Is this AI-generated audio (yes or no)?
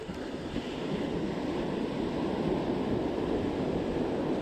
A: no